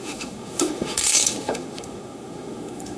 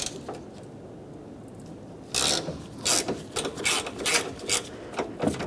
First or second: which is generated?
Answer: first